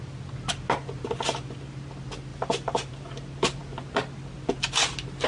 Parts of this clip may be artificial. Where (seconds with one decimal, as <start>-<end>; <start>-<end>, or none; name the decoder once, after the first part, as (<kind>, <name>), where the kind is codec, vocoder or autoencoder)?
2.3-2.9 (vocoder, BigVGAN v2)